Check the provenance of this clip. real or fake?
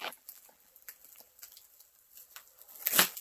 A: fake